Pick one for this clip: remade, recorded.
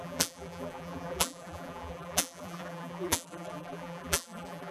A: remade